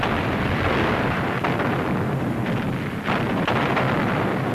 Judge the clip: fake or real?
fake